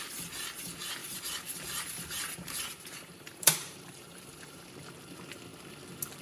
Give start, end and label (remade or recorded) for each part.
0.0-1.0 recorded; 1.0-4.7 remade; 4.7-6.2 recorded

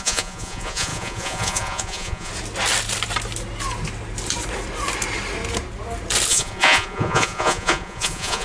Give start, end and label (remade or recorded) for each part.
0.0-2.3 remade; 2.3-6.3 recorded; 6.3-8.4 remade

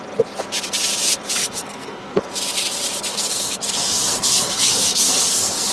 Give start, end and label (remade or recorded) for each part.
0.0-1.4 recorded; 1.4-2.2 remade; 2.2-3.1 recorded; 3.1-5.7 remade

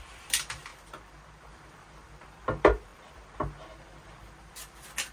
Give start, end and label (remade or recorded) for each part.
0.0-0.7 remade; 0.7-1.5 recorded; 1.5-5.1 remade

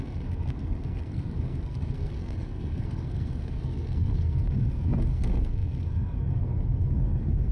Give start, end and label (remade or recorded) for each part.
0.0-7.5 remade